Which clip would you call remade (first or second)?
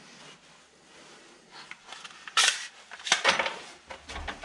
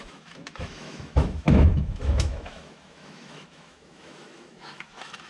second